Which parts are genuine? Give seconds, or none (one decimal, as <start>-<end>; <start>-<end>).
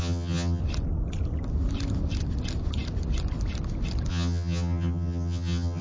0.6-4.1